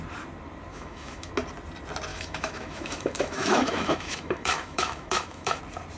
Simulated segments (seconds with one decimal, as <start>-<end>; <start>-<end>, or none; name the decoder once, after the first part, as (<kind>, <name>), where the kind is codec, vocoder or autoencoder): 0.7-1.3 (autoencoder, DAC-VAE); 2.1-5.6